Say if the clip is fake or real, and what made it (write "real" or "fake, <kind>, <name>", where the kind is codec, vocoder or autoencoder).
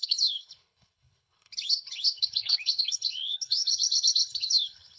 fake, codec, HILCodec